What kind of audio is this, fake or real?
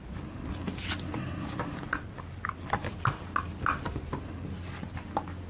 real